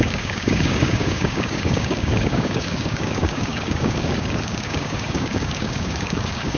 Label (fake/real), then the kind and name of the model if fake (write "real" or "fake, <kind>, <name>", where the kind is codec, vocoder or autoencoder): fake, codec, DAC